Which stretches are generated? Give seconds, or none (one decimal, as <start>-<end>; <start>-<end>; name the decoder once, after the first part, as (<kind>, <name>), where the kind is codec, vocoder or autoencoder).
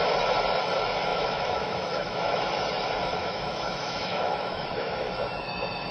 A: 1.1-2.5 (autoencoder, DAC-VAE); 3.2-5.1